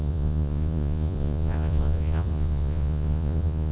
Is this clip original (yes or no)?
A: no